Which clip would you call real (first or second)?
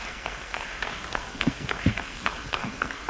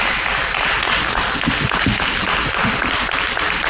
second